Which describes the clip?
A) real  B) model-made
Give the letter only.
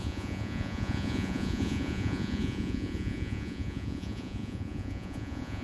B